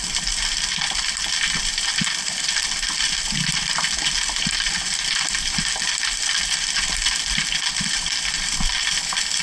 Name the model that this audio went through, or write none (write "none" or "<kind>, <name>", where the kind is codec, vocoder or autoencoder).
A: vocoder, BigVGAN v2